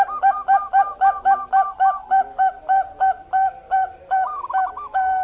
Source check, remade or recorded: recorded